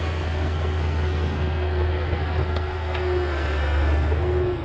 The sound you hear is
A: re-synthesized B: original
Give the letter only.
A